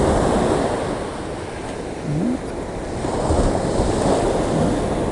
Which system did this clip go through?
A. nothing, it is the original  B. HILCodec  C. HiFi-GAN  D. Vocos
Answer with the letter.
A